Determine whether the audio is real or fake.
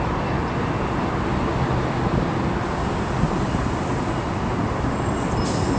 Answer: real